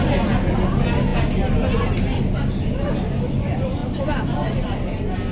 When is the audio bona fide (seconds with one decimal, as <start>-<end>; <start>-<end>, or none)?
0.0-5.3